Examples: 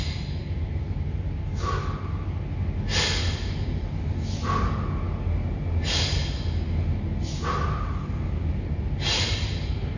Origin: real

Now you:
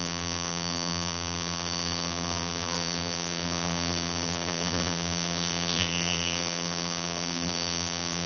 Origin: fake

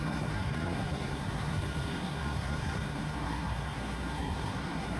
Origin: fake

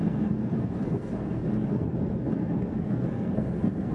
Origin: fake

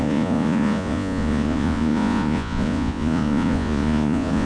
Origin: fake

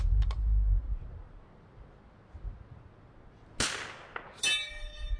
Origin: real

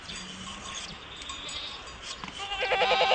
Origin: real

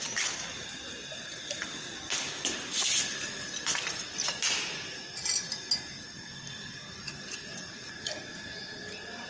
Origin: real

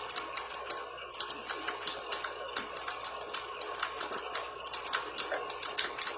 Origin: real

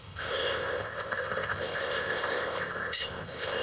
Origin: fake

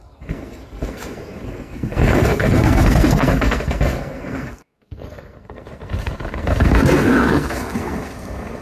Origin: fake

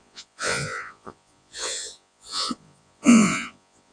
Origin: fake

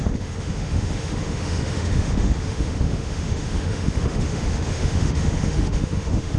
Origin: fake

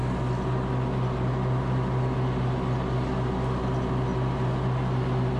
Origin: real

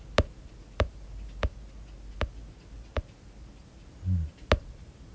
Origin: real